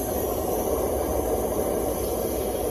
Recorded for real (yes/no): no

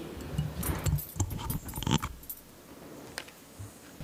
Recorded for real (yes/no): yes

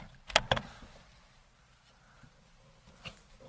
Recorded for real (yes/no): yes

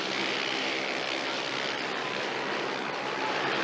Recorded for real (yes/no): no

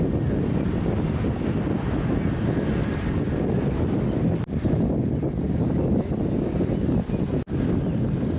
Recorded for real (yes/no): yes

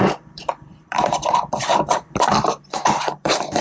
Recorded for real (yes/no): no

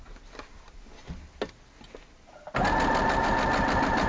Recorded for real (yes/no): yes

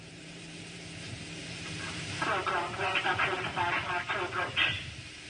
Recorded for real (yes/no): no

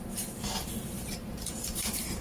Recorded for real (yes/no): no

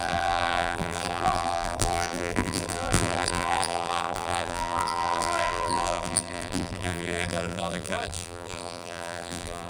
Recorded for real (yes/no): no